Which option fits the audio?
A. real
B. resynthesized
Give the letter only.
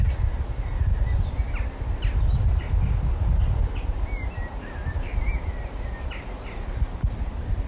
A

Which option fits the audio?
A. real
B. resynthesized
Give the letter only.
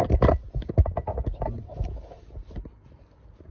A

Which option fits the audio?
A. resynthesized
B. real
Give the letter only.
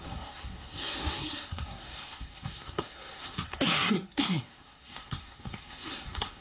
A